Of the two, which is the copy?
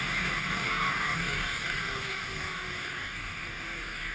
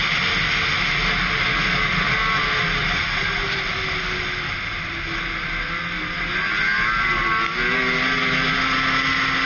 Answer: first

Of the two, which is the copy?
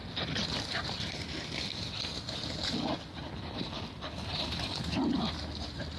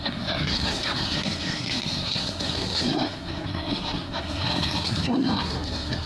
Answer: second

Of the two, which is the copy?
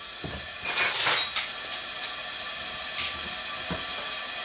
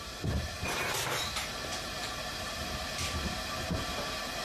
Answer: second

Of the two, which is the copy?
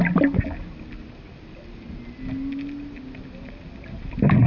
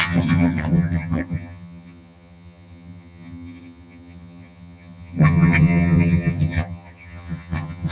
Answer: second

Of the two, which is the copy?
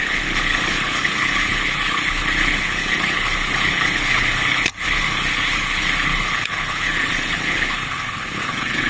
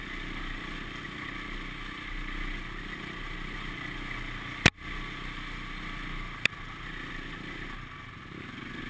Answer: first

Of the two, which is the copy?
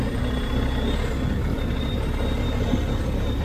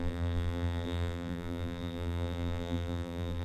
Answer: second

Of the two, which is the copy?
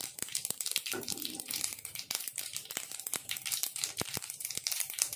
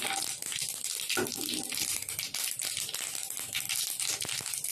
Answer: first